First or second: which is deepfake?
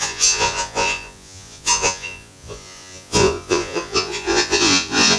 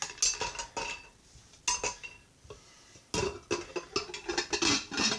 first